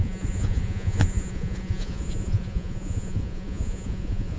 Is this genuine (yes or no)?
no